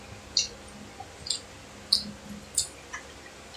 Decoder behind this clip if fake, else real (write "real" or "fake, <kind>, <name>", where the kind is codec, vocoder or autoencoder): real